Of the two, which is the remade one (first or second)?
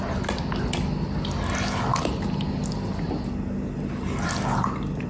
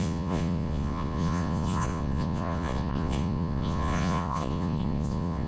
second